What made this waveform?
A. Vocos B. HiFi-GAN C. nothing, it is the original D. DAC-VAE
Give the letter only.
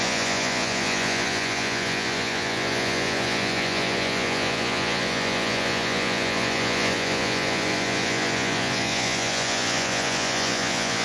A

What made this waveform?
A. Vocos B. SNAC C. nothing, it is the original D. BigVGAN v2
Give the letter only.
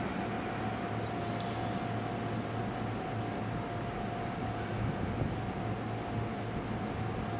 C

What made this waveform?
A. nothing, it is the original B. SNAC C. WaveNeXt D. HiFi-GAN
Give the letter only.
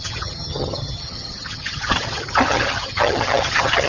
D